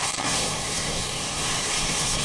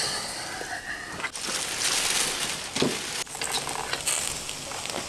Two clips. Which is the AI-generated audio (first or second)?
first